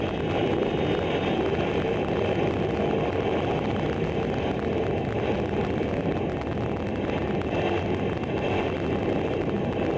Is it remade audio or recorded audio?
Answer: recorded